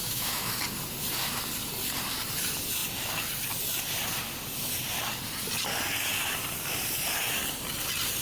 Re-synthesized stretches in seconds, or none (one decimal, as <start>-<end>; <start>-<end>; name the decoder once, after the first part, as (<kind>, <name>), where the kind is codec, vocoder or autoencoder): 0.0-0.5 (autoencoder, DAC-VAE)